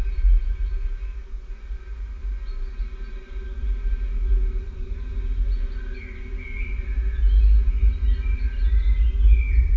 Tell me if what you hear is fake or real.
real